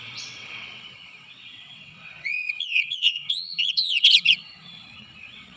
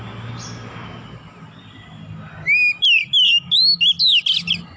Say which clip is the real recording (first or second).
second